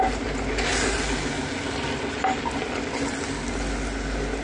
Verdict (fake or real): real